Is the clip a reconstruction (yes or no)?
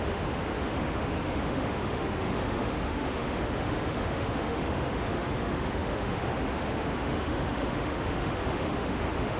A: yes